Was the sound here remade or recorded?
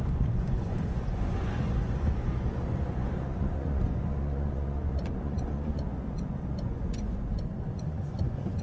remade